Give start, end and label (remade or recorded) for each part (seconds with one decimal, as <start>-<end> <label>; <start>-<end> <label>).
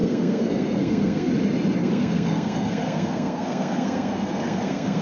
0.0-1.3 remade; 1.3-1.8 recorded; 1.8-5.0 remade